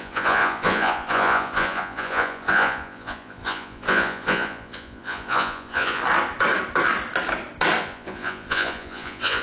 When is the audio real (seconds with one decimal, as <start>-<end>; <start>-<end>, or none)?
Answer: 6.0-7.8